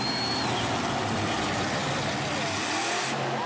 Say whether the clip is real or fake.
real